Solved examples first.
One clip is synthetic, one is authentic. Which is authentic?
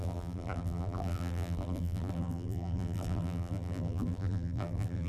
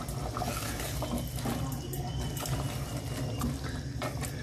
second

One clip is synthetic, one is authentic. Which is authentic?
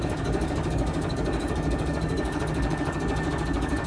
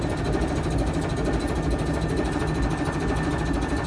second